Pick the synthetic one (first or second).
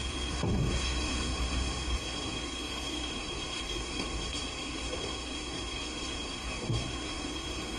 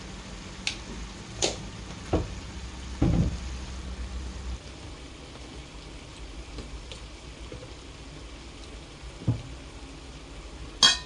first